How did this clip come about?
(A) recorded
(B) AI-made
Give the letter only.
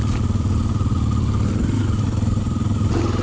A